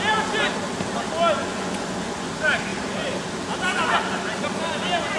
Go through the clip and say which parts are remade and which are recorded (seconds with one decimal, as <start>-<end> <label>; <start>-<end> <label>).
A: 0.0-1.4 recorded; 1.4-2.3 remade; 2.3-5.2 recorded